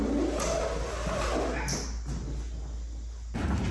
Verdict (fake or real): real